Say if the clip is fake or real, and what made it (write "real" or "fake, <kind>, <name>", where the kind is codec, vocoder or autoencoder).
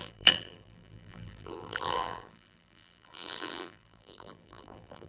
fake, vocoder, BigVGAN v2